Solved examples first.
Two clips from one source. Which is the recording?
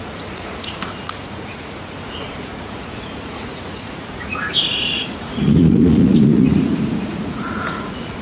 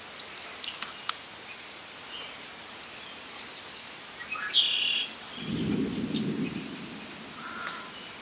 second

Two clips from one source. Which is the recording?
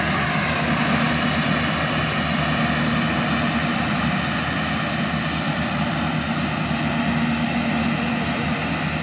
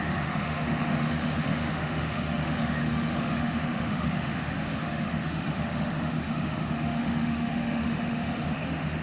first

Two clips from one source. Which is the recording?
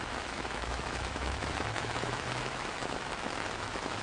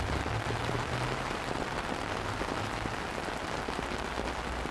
second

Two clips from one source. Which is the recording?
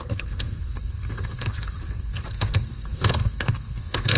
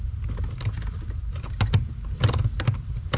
second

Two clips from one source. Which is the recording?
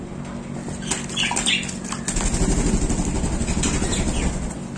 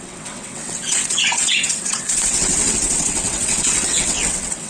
first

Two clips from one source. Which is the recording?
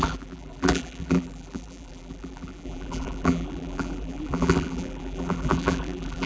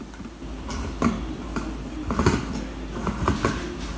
second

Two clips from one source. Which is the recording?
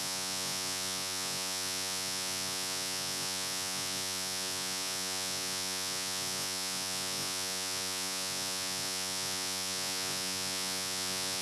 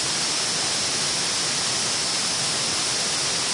second